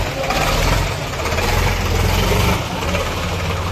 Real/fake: real